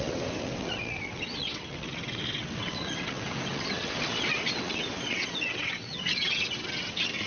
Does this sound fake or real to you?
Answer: fake